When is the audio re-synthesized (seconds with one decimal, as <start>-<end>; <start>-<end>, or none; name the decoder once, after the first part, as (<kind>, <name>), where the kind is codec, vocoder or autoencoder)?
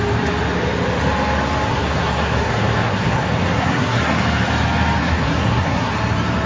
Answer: 1.7-4.2 (codec, SNAC); 5.0-5.9